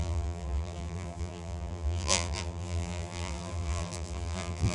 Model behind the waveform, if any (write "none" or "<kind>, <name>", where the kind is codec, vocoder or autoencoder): vocoder, BigVGAN v2